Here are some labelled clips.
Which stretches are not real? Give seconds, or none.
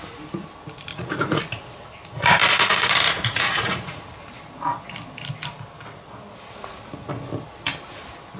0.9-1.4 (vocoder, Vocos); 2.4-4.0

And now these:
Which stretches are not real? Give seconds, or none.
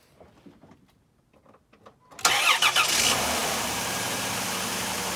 3.4-4.3 (vocoder, BigVGAN v2)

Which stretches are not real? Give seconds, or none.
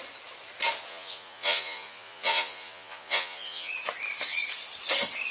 0.9-3.7 (vocoder, Vocos)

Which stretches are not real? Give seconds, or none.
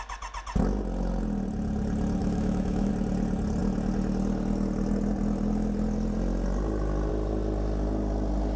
2.2-2.9 (autoencoder, DAC-VAE)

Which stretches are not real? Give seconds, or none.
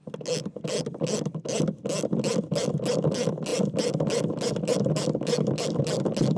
none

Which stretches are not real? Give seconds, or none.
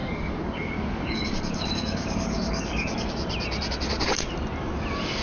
0.0-3.1 (codec, DAC)